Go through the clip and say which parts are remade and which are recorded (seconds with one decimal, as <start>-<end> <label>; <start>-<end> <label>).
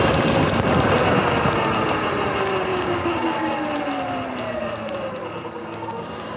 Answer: 0.0-2.7 recorded; 2.7-3.7 remade; 3.7-5.6 recorded; 5.6-6.4 remade